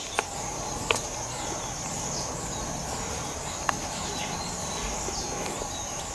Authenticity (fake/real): real